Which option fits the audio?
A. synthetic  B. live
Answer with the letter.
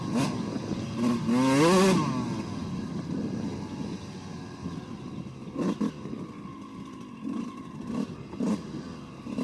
B